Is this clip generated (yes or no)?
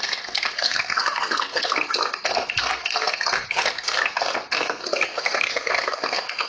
yes